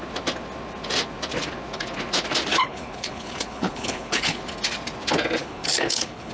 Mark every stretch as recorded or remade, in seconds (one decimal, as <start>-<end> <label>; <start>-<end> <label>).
0.0-2.5 recorded; 2.5-4.4 remade; 4.4-5.4 recorded; 5.4-6.3 remade